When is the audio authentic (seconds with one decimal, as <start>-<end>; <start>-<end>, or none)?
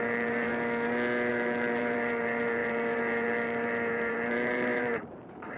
0.5-1.3